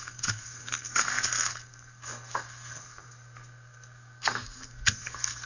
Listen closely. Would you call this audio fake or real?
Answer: fake